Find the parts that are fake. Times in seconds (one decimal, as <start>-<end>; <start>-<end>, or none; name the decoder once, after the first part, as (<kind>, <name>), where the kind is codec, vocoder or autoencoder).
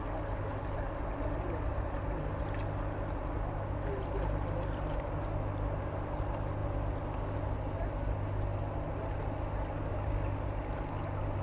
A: none